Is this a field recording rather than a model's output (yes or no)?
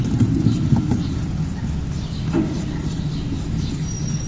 yes